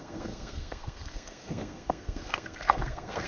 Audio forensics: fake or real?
fake